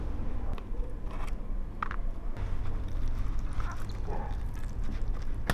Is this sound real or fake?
real